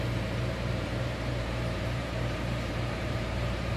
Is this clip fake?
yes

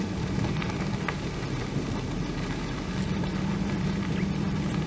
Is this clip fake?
yes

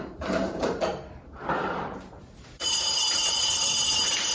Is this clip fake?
yes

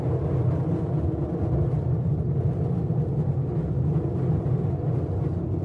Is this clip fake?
no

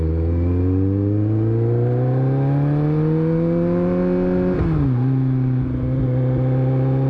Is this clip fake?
no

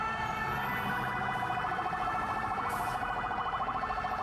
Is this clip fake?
yes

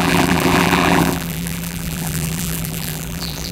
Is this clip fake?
yes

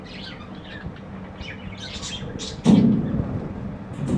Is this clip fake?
no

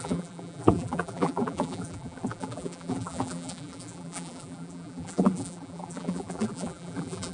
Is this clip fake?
yes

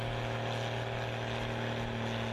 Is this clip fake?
no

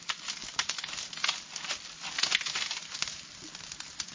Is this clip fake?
no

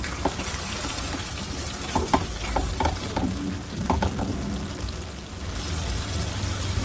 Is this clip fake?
no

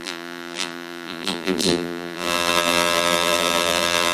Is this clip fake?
yes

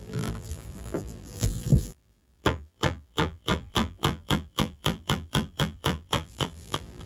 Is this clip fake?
yes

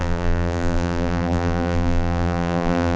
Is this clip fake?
yes